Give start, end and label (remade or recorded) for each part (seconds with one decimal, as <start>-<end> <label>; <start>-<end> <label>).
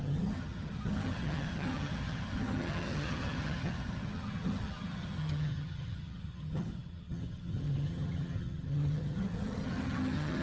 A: 0.0-10.4 remade